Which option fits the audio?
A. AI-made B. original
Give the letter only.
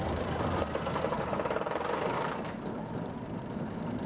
A